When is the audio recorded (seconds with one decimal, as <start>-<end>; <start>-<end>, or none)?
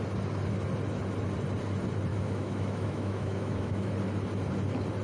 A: 0.0-2.1; 3.9-5.0